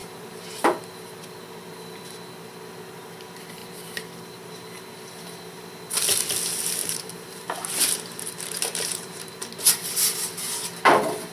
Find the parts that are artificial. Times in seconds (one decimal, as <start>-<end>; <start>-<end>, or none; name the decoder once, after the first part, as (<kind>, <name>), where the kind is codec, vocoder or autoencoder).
0.0-0.6 (vocoder, BigVGAN v2); 6.8-9.4